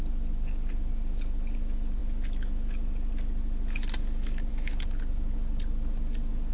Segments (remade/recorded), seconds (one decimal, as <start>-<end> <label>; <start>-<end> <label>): 0.0-6.5 recorded